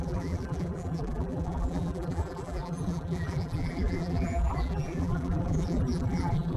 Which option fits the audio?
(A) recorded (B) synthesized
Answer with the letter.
B